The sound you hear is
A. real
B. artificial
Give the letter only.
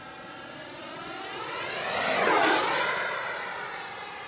A